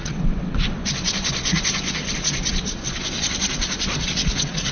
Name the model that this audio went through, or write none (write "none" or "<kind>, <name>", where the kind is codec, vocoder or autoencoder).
vocoder, WaveNeXt